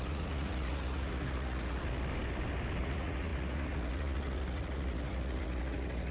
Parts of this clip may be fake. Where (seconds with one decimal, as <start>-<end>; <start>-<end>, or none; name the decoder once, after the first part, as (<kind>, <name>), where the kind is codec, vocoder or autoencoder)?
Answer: 0.0-1.8 (vocoder, Vocos); 2.8-6.1